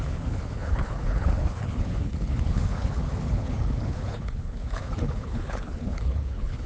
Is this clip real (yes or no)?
no